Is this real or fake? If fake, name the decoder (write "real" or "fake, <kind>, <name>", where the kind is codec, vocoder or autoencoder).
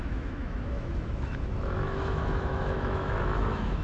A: fake, autoencoder, DAC-VAE